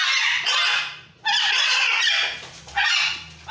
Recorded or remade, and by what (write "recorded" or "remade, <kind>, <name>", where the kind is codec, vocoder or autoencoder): recorded